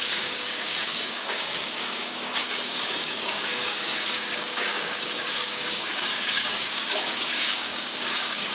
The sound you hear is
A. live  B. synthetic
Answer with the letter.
B